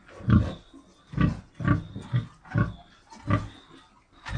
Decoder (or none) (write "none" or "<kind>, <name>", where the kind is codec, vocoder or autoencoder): none